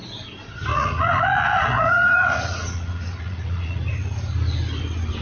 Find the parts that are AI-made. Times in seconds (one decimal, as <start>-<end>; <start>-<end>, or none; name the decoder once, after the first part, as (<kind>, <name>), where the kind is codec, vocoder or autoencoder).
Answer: 0.7-3.8 (vocoder, Vocos)